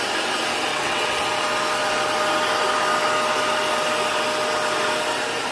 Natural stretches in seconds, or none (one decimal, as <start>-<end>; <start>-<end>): 0.0-0.7; 1.2-5.5